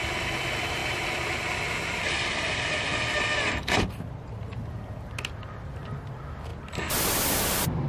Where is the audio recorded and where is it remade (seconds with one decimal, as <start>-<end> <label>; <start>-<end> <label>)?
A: 0.0-7.9 recorded